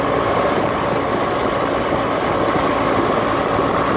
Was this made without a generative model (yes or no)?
yes